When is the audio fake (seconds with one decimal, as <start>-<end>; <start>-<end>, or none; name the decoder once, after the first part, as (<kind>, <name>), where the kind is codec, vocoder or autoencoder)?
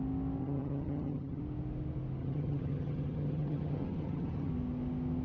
0.4-1.4 (vocoder, HiFi-GAN); 2.2-4.5